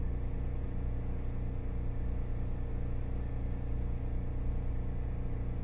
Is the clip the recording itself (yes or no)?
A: yes